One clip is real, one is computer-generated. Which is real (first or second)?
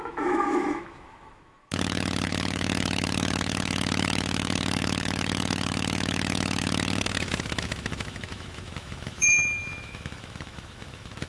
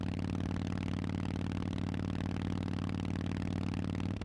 second